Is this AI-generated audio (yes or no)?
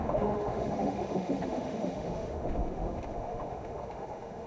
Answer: yes